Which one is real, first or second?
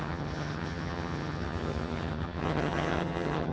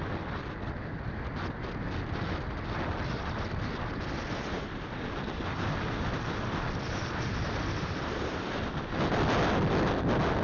second